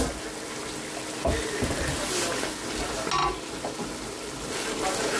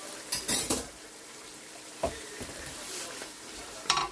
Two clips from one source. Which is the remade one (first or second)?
second